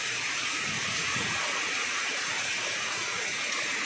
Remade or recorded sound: remade